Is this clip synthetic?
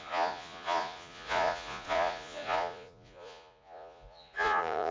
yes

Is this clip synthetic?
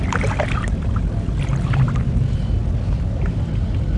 no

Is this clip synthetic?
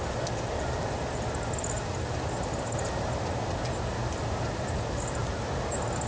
no